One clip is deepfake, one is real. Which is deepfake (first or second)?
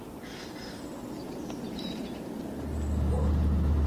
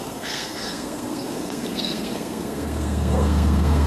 second